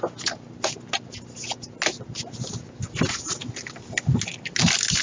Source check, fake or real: real